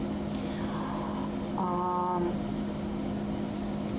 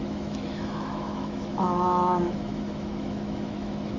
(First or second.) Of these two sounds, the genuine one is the first